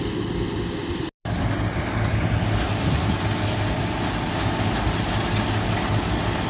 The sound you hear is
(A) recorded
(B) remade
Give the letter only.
A